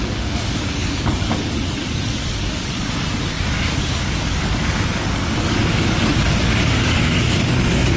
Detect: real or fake fake